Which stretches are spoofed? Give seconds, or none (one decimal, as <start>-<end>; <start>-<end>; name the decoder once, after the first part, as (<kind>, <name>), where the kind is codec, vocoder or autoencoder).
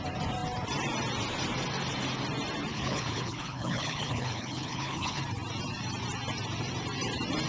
2.7-5.2 (codec, HILCodec)